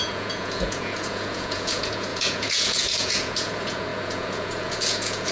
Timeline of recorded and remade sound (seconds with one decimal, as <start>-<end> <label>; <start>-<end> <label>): 0.0-5.3 remade